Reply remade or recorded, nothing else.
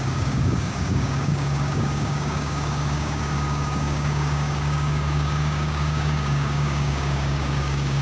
remade